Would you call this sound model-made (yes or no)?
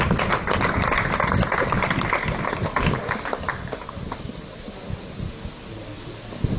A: no